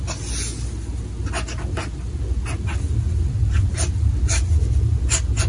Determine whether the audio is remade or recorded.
recorded